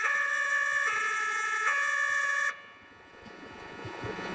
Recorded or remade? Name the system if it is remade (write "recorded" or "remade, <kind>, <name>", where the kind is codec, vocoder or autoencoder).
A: remade, vocoder, Vocos